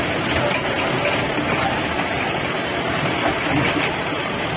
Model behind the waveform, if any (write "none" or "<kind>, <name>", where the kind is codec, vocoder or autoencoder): none